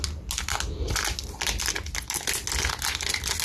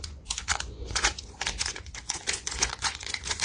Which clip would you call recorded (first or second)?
first